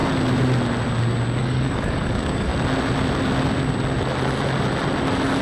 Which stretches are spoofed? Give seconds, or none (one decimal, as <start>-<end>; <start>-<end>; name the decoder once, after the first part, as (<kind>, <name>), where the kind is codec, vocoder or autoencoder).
1.4-2.5 (codec, DAC)